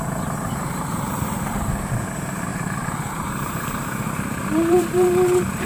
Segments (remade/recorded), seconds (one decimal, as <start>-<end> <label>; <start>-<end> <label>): 0.0-5.7 remade